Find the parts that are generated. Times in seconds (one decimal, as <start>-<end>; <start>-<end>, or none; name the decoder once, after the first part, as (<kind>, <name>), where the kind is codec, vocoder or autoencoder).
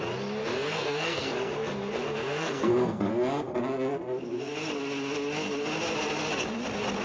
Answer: 0.4-3.1 (codec, SNAC)